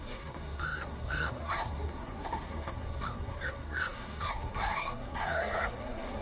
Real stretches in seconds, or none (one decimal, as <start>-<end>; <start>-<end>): none

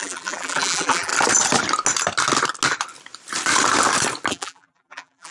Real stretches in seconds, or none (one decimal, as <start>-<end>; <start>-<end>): 1.1-4.3

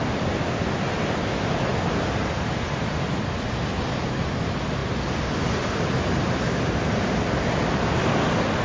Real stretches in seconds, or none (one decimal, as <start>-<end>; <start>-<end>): 0.0-8.6

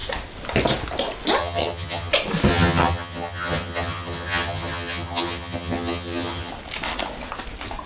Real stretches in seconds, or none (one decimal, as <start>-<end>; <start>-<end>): 0.0-1.4; 2.1-2.5; 6.5-7.9

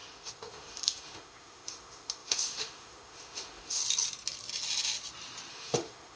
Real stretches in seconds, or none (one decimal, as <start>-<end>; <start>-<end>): 3.8-5.5

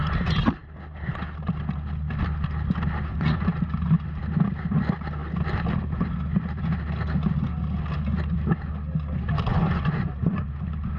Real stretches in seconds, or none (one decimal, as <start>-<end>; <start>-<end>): 0.0-3.1; 3.6-9.5; 10.5-11.0